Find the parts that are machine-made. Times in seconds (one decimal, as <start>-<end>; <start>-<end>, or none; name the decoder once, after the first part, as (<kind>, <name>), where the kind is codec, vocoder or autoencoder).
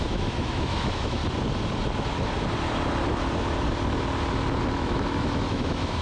0.0-1.2 (autoencoder, DAC-VAE); 4.7-6.0